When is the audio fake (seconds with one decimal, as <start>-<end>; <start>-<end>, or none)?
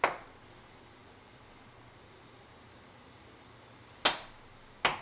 none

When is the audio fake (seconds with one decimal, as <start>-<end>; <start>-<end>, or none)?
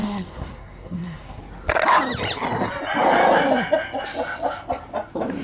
0.0-1.4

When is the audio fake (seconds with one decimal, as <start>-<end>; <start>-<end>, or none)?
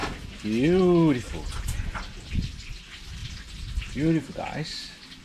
none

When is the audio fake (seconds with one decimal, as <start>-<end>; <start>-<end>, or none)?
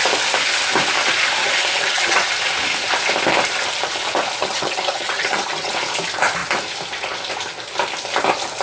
1.4-2.3; 4.4-5.7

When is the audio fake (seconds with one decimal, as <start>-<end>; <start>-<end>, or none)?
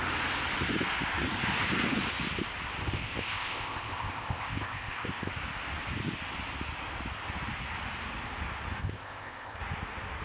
2.8-5.3; 8.8-9.6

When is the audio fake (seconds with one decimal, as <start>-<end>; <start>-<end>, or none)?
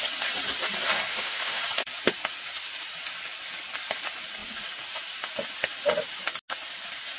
1.1-1.6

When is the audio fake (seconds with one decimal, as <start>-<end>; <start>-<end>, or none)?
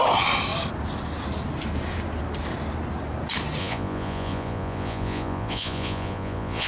3.6-6.7